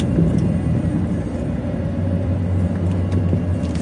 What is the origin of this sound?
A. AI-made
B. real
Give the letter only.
B